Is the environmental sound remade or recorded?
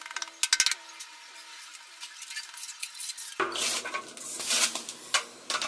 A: recorded